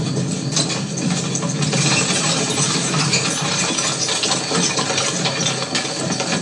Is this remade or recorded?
recorded